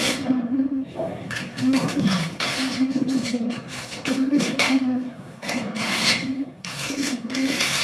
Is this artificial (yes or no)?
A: yes